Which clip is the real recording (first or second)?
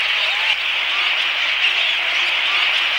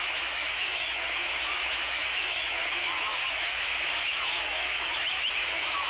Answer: first